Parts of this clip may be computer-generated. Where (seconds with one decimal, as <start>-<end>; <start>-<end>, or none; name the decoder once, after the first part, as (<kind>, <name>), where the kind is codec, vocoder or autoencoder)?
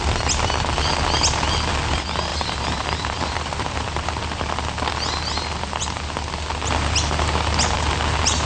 2.3-4.1 (vocoder, BigVGAN v2)